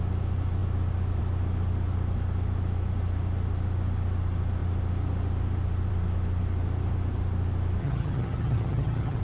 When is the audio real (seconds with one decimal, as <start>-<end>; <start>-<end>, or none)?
0.0-7.8

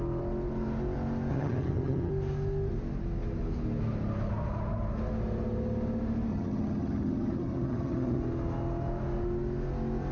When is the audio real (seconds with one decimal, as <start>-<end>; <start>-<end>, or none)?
0.0-1.3; 2.1-6.3; 8.2-10.1

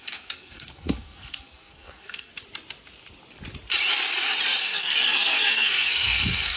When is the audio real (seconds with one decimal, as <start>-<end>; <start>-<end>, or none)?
2.3-4.6